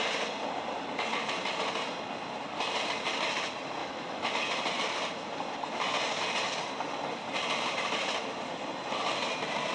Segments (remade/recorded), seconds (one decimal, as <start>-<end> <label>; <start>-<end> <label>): 0.0-3.8 recorded; 3.8-4.3 remade; 4.3-9.7 recorded